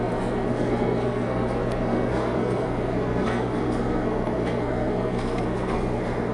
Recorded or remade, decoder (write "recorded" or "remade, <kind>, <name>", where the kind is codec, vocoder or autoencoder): remade, codec, SNAC